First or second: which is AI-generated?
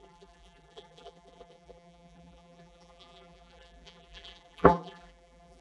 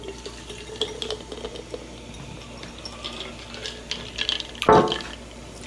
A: first